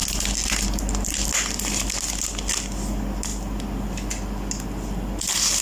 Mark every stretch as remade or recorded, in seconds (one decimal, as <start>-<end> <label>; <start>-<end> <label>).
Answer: 0.0-5.6 recorded